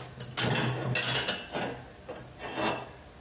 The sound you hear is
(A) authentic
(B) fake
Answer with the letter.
A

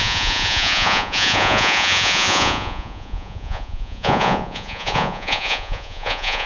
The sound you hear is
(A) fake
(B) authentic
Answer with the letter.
A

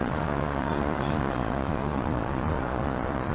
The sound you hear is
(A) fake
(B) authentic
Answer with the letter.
A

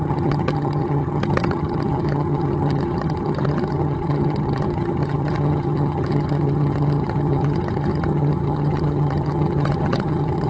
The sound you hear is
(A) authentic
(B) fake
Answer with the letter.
B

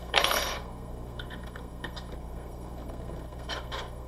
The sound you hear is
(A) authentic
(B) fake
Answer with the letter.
B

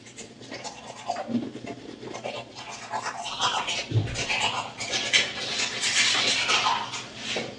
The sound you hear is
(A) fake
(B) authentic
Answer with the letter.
B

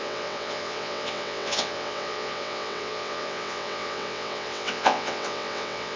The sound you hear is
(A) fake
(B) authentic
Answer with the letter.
A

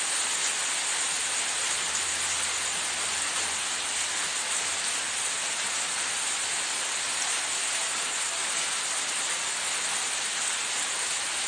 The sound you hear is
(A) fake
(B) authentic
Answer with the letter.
B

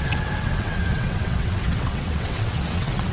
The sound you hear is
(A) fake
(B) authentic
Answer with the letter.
A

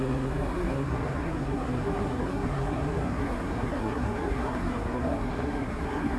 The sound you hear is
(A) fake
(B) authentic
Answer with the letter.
A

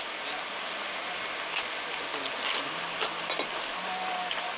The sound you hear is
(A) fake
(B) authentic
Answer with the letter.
B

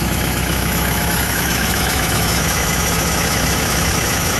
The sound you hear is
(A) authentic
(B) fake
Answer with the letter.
B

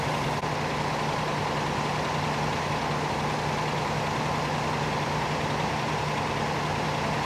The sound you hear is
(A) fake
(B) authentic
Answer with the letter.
B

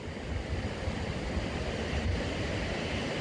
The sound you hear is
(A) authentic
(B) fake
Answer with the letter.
A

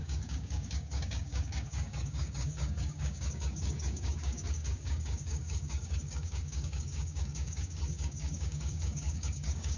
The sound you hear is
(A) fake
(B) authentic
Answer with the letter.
A